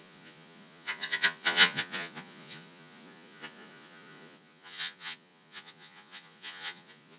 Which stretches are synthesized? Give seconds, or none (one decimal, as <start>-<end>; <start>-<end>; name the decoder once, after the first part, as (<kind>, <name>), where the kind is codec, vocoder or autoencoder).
0.0-7.2 (vocoder, Vocos)